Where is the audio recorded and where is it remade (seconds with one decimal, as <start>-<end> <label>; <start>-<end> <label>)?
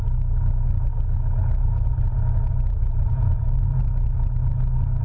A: 0.0-1.4 recorded; 1.4-4.4 remade; 4.4-5.0 recorded